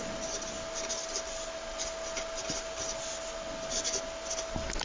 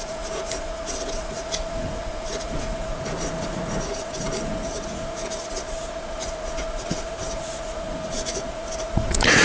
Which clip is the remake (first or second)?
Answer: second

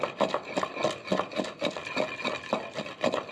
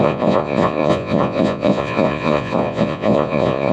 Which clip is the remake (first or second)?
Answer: second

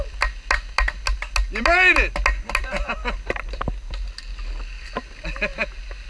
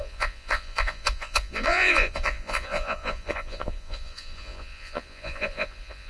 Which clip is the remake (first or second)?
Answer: second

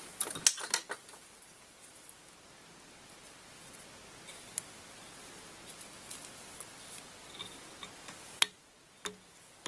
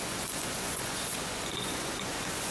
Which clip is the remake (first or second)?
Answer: second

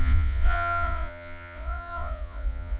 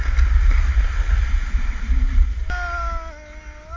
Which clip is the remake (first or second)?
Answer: first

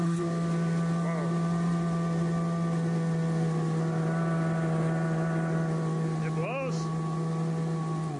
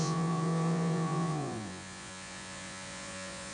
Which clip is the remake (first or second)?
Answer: second